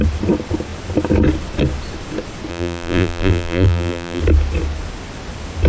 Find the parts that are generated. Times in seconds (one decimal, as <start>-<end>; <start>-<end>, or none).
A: 2.5-4.2